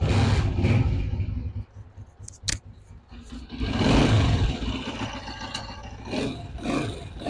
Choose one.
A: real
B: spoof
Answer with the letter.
A